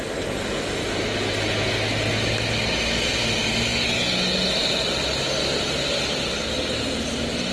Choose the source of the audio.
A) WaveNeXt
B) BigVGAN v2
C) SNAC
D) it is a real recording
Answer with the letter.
D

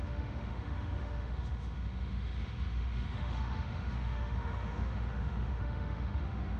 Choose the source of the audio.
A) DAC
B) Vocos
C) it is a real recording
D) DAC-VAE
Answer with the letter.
D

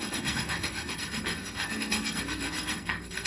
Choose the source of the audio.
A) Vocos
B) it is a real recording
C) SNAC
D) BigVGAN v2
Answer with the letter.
C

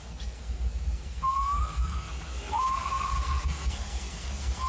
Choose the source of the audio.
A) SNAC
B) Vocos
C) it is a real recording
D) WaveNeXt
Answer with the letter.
A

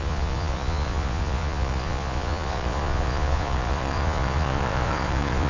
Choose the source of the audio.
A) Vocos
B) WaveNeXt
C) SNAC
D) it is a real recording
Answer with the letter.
A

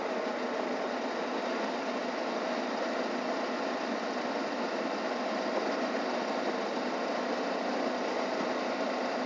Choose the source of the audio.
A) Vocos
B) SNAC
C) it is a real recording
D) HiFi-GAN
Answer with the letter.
C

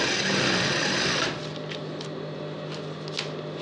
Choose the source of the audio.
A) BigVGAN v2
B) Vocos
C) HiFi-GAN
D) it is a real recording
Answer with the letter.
D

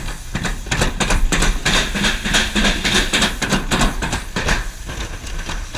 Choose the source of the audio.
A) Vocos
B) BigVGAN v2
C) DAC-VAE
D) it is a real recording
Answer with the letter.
D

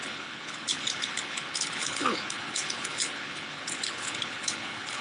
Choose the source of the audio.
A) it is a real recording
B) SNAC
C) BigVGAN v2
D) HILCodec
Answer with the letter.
D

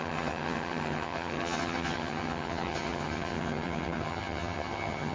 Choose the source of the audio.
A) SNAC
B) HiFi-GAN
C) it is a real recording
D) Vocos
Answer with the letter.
B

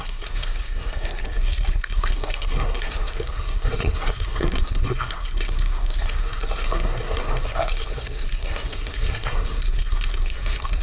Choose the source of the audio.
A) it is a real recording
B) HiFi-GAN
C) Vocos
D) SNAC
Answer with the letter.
D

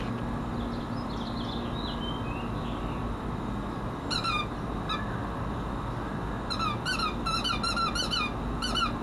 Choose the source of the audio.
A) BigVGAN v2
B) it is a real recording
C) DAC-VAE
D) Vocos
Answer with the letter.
B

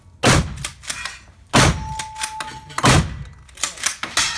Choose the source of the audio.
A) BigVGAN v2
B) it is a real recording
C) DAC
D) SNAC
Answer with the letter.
B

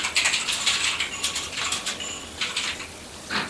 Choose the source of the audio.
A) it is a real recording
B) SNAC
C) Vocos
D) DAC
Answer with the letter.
A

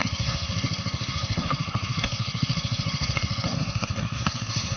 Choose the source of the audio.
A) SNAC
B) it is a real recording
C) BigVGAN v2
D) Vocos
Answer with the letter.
A